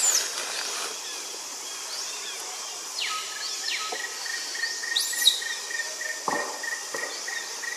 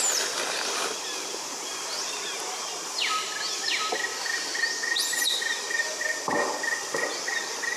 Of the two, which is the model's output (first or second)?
second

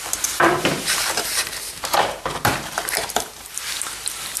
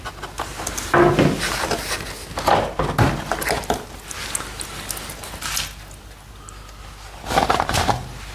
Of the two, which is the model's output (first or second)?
first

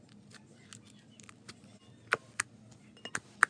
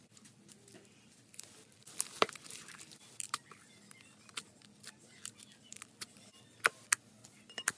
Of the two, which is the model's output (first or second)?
second